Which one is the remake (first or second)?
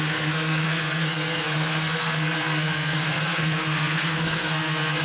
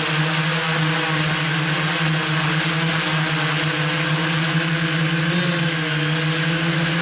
first